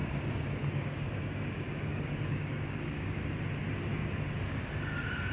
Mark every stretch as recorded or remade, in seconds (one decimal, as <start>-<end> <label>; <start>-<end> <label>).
0.0-3.2 remade; 3.2-3.9 recorded; 3.9-4.6 remade; 4.6-5.3 recorded